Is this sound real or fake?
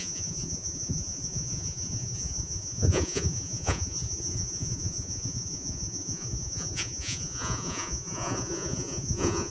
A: fake